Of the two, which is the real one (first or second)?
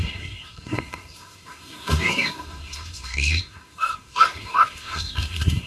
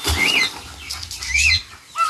second